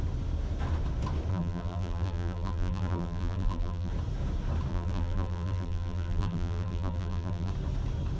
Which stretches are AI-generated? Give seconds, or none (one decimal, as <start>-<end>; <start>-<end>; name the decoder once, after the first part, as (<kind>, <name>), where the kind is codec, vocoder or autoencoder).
1.3-3.9 (vocoder, BigVGAN v2); 4.7-7.5